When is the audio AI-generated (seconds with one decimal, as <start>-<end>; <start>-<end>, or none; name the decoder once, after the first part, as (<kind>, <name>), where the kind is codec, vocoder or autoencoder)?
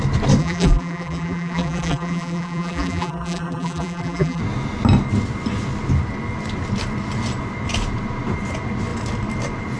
0.4-4.4 (vocoder, BigVGAN v2)